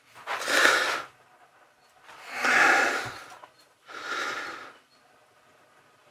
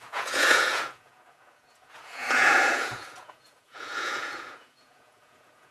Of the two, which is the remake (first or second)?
second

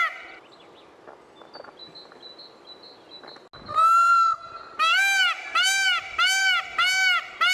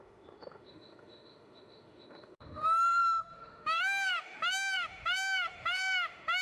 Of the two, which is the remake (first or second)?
second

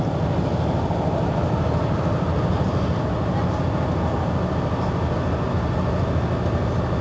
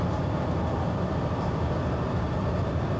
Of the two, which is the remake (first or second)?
second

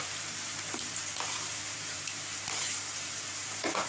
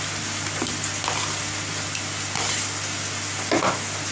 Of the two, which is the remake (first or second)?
first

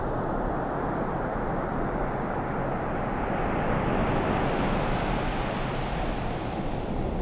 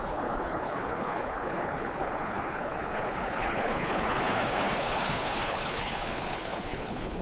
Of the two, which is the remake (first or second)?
second